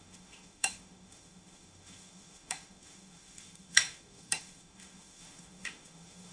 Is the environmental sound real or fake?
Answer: fake